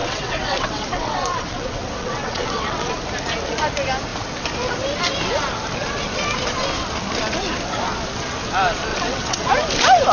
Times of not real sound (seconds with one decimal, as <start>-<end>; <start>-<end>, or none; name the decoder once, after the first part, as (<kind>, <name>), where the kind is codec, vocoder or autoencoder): 0.0-2.9 (vocoder, WaveNeXt); 8.9-9.5